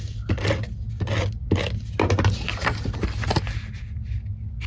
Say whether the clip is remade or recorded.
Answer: recorded